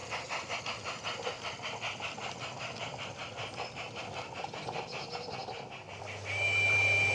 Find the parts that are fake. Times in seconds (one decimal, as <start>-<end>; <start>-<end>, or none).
none